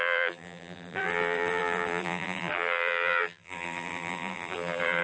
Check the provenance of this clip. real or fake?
fake